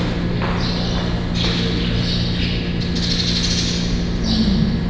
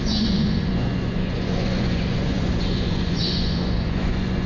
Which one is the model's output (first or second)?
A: second